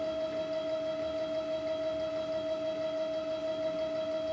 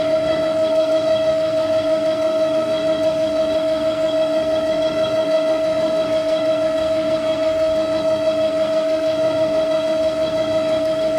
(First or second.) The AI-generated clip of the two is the second